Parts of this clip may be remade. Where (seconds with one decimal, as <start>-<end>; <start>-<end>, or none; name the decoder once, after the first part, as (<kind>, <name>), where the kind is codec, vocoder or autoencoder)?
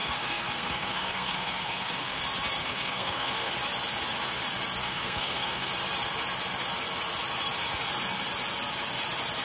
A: 0.0-2.2 (codec, SNAC); 2.6-3.5; 4.8-5.7